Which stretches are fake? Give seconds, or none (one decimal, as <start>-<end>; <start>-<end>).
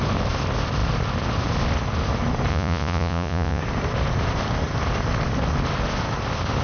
2.5-3.6